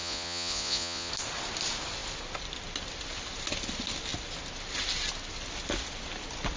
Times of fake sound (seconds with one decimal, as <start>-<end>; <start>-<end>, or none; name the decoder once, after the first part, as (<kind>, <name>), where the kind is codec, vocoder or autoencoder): 0.0-1.1 (vocoder, Vocos)